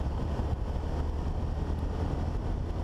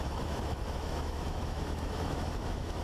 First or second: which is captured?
first